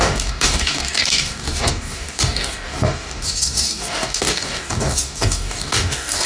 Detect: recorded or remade remade